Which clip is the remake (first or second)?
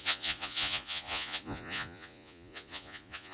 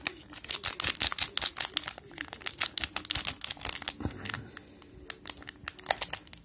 first